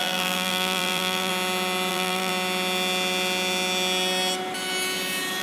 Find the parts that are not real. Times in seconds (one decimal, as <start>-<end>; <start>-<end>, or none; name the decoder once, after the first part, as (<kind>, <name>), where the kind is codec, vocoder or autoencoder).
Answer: 0.0-1.3 (vocoder, BigVGAN v2); 1.9-2.3